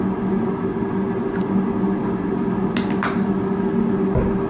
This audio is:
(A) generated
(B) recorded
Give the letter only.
B